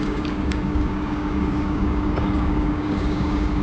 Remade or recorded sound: remade